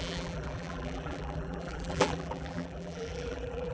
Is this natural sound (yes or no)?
no